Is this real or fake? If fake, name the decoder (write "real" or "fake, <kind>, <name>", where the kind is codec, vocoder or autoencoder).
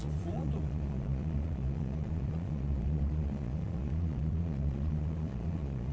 fake, vocoder, Vocos